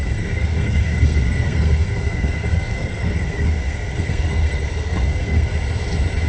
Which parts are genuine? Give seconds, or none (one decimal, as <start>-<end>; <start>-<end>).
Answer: 5.5-6.3